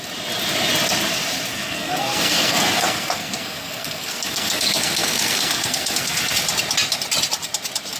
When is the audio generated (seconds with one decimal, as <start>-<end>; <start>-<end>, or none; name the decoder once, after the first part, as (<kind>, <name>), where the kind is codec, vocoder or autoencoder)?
1.5-6.3 (codec, SNAC)